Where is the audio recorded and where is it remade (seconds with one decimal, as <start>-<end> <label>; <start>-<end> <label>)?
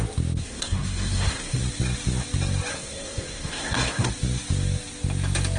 0.0-0.4 recorded; 0.4-1.6 remade; 1.6-2.7 recorded; 2.7-4.1 remade; 4.1-5.6 recorded